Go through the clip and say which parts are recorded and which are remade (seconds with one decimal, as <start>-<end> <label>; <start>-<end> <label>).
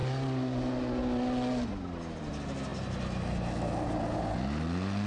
0.0-5.1 recorded